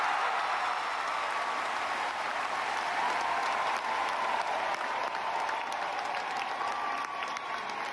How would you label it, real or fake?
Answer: real